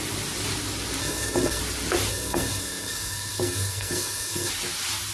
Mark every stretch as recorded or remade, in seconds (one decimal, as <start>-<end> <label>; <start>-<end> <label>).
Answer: 0.0-1.0 recorded; 1.0-1.6 remade; 1.6-2.1 recorded; 2.1-4.5 remade; 4.5-5.1 recorded